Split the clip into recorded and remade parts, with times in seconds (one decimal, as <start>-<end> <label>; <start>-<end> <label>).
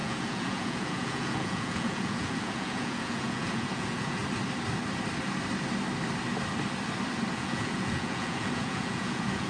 0.0-4.2 remade; 4.2-7.3 recorded; 7.3-9.5 remade